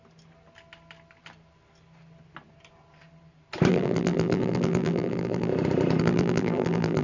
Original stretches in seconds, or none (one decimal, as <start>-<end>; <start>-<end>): 0.0-3.7; 5.5-6.0